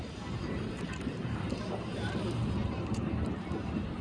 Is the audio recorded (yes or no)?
no